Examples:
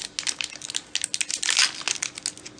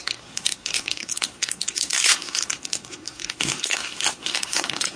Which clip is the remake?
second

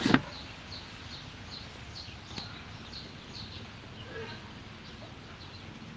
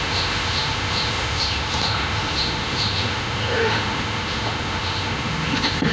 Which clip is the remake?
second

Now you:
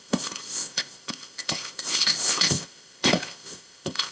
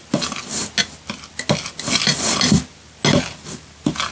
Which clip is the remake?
first